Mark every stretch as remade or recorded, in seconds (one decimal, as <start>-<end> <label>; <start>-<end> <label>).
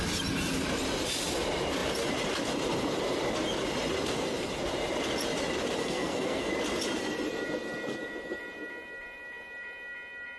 0.0-5.8 recorded; 5.8-6.5 remade; 6.5-10.4 recorded